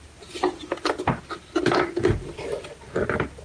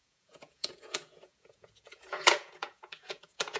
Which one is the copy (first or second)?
second